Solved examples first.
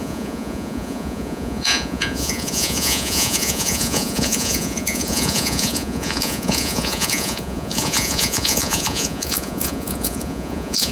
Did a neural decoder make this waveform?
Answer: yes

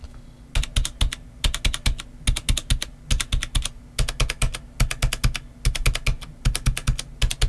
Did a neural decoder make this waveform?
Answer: no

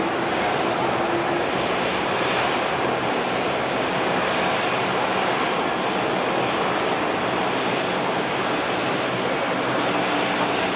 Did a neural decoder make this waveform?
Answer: no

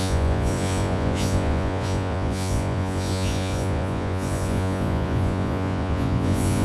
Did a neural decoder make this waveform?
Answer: yes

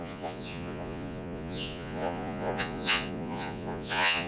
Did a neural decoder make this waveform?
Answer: yes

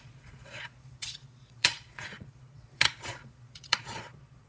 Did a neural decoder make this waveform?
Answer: yes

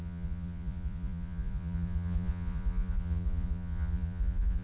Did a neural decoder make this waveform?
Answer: yes